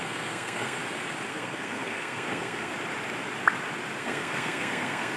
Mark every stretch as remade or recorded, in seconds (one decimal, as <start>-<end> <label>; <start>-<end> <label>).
0.0-0.8 remade; 0.8-1.3 recorded; 1.3-2.7 remade; 2.7-4.0 recorded; 4.0-5.2 remade